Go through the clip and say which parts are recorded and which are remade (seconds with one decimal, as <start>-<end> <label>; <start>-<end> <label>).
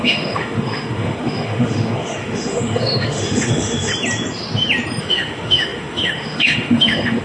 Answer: 0.0-3.9 remade; 3.9-5.0 recorded; 5.0-7.2 remade